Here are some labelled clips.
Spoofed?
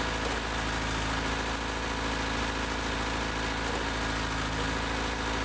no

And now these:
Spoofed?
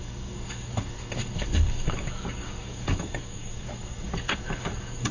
yes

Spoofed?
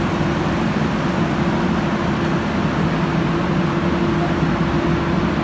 no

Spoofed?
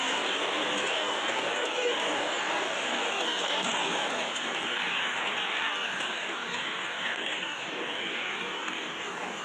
yes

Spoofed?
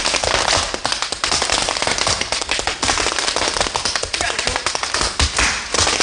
no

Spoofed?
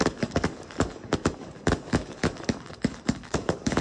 yes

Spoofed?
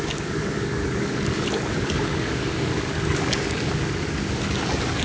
yes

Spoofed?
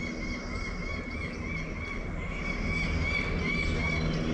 no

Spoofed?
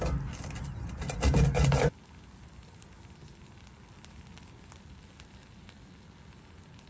no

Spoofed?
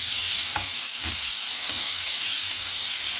yes